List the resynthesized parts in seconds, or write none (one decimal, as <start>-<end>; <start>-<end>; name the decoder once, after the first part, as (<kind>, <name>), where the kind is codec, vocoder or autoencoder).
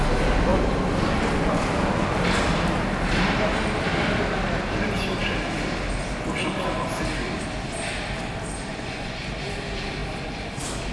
8.7-9.2 (vocoder, Vocos)